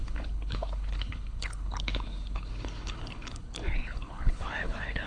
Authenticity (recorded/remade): remade